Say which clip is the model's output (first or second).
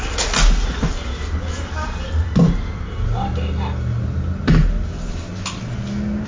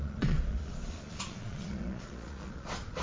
second